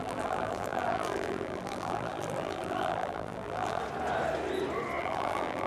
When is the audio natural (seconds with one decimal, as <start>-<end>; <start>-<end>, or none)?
3.8-5.0